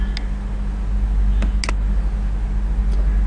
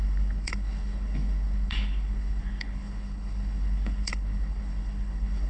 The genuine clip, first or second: first